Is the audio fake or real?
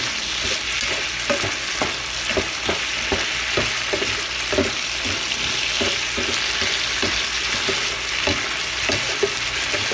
real